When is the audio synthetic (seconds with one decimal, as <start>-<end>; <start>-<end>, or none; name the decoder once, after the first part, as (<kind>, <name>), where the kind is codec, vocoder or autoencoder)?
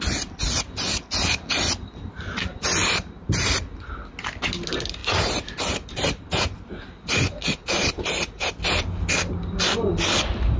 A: 2.8-3.6 (vocoder, BigVGAN v2); 5.0-6.9; 7.6-8.5